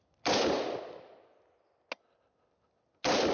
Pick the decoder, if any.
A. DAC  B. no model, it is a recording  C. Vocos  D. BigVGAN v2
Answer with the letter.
B